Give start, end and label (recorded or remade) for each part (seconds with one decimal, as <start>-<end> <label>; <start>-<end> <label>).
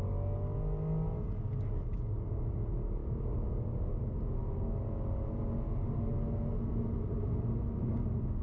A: 0.0-8.4 recorded